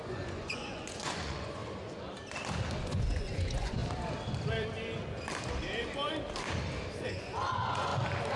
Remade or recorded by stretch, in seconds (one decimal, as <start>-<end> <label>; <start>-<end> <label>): 0.0-1.6 remade; 1.6-2.8 recorded; 2.8-3.8 remade; 3.8-7.0 recorded; 7.0-7.9 remade; 7.9-8.4 recorded